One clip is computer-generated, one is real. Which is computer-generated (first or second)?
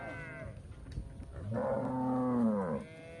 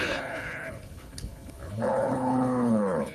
second